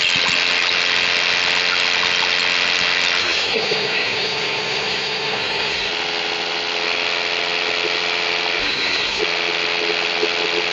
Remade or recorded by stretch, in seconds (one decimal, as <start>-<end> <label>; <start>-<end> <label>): 0.0-3.2 recorded; 3.2-5.9 remade; 5.9-8.6 recorded; 8.6-9.2 remade; 9.2-10.7 recorded